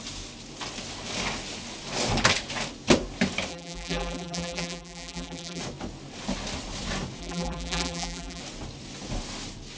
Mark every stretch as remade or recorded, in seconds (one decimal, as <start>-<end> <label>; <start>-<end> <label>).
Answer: 0.0-3.5 recorded; 3.5-5.6 remade; 5.6-7.2 recorded; 7.2-8.4 remade; 8.4-9.8 recorded